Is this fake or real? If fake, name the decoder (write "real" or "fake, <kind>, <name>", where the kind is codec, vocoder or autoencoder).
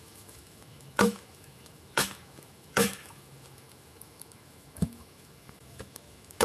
fake, autoencoder, DAC-VAE